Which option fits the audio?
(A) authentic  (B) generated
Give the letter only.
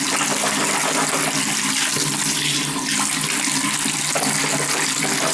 A